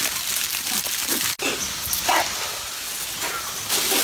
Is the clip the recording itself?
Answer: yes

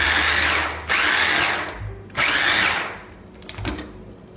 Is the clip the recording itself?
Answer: yes